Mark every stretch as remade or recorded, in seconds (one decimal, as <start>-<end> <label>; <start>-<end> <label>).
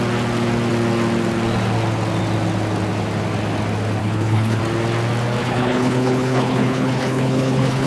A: 0.0-4.0 recorded; 4.0-4.6 remade; 4.6-5.4 recorded; 5.4-7.9 remade